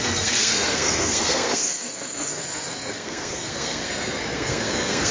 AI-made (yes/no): yes